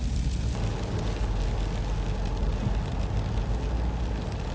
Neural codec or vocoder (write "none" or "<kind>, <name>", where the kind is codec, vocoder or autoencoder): none